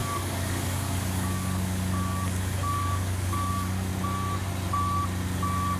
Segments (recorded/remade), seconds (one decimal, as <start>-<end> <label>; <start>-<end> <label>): 0.0-3.9 remade; 3.9-5.8 recorded